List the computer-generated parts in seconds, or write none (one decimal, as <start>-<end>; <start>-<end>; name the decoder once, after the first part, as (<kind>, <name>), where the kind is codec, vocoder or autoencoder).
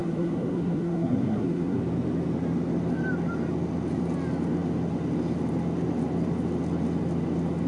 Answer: 0.0-1.8 (codec, SNAC)